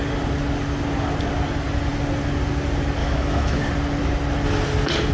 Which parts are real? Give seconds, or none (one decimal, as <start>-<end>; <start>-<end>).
0.0-3.0; 3.6-5.1